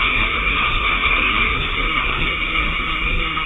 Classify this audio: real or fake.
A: fake